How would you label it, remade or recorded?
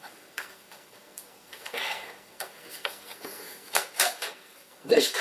remade